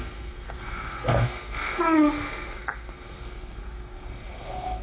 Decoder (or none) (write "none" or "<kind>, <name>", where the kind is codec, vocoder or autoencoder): codec, SNAC